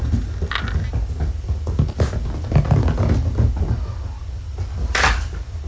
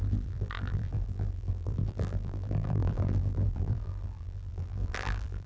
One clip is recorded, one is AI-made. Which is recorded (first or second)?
first